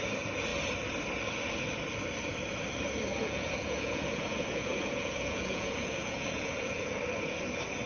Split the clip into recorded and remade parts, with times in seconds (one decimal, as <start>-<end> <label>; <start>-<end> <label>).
0.0-3.2 recorded; 3.2-6.9 remade; 6.9-7.9 recorded